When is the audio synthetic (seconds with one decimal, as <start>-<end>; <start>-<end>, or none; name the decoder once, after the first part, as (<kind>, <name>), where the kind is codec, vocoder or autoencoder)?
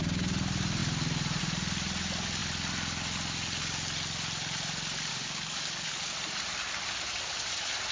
5.1-5.9 (codec, DAC)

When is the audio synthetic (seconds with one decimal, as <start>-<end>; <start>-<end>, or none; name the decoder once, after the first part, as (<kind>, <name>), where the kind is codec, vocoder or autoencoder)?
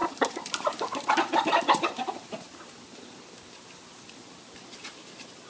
0.0-3.3 (vocoder, BigVGAN v2)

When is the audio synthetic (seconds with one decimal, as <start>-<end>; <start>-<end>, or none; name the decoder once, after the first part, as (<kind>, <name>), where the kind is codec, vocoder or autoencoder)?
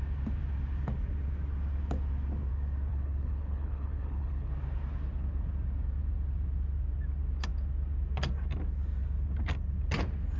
2.9-4.5 (codec, HILCodec)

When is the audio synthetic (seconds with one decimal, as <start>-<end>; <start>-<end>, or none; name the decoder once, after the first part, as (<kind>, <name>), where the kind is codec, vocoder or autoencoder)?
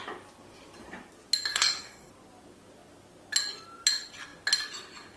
1.5-2.1 (codec, SNAC)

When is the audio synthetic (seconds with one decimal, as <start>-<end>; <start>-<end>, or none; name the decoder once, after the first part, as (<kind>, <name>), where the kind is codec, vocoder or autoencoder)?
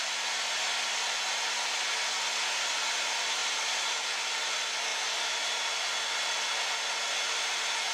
none